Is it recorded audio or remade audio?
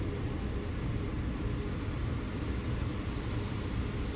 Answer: recorded